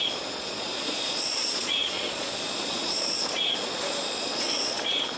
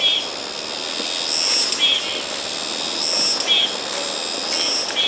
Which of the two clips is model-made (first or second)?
first